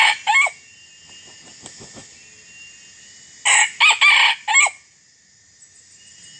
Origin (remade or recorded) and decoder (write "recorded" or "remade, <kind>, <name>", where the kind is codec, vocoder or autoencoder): recorded